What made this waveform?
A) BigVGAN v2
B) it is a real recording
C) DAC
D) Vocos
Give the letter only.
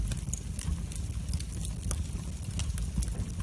B